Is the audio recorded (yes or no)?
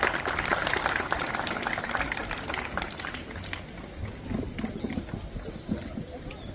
yes